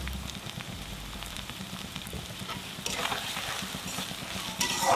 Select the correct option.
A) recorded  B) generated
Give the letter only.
B